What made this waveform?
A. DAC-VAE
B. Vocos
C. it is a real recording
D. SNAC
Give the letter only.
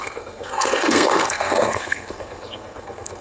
D